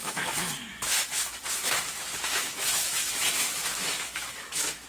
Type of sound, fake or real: fake